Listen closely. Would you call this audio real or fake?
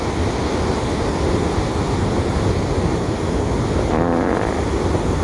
real